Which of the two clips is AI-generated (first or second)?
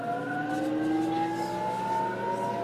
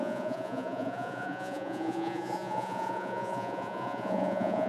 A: second